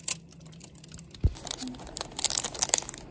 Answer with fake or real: real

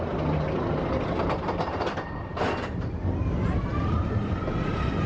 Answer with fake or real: real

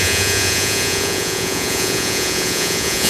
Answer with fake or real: fake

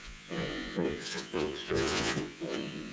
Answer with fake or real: fake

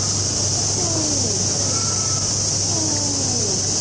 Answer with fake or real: real